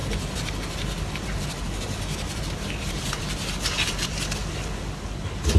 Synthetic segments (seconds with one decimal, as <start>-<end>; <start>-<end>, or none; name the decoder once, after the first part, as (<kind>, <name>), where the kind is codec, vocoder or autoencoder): none